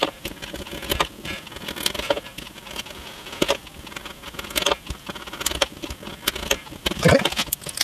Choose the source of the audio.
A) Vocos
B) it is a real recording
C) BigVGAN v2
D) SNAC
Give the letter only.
B